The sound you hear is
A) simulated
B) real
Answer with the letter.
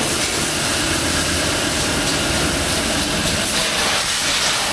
B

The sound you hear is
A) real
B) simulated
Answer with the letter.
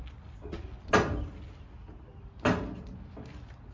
A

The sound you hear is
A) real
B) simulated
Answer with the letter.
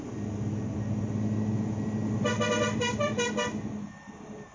A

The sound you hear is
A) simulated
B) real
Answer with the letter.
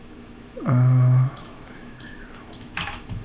A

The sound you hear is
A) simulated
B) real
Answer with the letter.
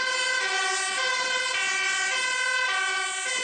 B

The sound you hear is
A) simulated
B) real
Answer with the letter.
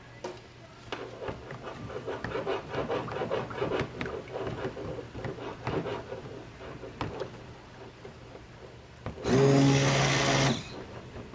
B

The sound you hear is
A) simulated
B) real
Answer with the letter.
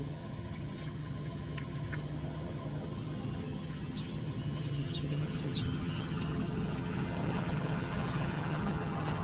A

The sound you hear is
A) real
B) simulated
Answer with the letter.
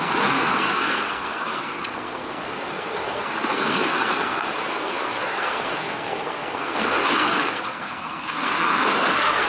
B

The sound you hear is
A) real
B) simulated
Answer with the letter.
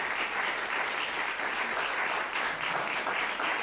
A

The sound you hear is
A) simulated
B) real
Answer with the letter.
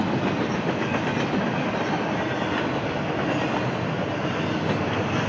B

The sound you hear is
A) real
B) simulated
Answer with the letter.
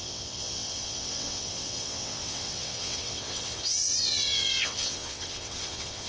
B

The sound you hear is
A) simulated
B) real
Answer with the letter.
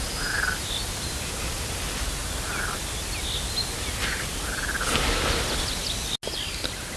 B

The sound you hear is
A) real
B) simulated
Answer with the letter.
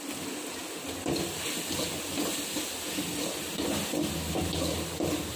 A